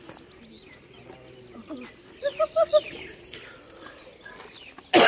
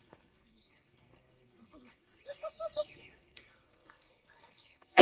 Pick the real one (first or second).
first